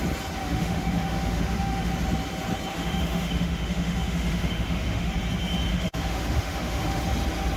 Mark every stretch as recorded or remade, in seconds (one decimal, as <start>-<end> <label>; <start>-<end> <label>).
0.0-0.4 recorded; 0.4-1.9 remade; 1.9-2.7 recorded; 2.7-5.1 remade; 5.1-5.7 recorded; 5.7-7.0 remade; 7.0-7.6 recorded